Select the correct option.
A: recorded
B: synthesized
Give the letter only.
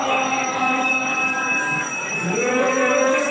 B